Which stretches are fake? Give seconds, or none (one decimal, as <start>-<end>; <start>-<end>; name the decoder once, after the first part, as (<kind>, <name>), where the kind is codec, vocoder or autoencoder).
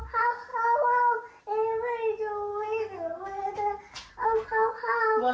2.5-3.4 (codec, SNAC); 4.2-4.7